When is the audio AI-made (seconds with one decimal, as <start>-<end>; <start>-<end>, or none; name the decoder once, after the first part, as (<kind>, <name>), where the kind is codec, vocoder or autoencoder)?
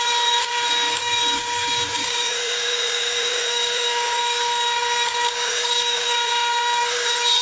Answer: 0.0-7.4 (codec, DAC)